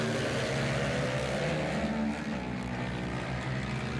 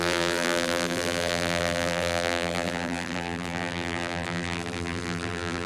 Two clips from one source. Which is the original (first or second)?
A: first